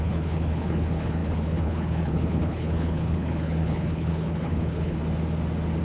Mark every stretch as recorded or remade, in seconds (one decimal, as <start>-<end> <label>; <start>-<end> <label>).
0.0-5.0 remade; 5.0-5.8 recorded